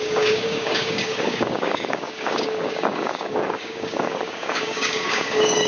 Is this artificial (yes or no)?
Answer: yes